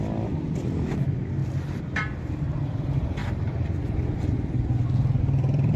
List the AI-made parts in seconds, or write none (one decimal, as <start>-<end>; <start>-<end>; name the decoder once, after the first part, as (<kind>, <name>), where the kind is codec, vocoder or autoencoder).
0.0-3.2 (vocoder, BigVGAN v2); 5.2-5.8